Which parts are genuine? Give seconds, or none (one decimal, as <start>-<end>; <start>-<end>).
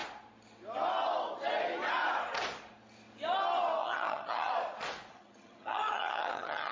0.0-3.8; 4.5-5.1